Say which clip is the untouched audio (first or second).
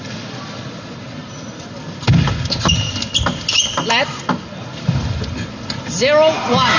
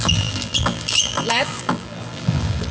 first